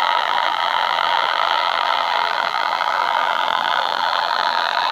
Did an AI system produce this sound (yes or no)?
yes